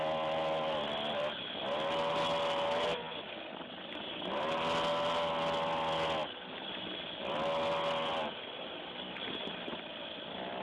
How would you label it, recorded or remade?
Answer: recorded